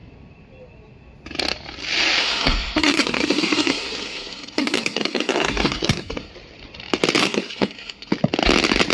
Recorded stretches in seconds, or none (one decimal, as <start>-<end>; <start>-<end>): 0.0-2.2; 6.3-7.2; 8.1-8.9